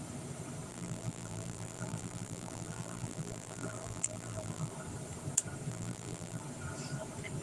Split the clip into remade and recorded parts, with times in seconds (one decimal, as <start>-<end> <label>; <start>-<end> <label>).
0.0-0.7 recorded; 0.7-4.7 remade; 4.7-5.7 recorded; 5.7-6.4 remade; 6.4-7.4 recorded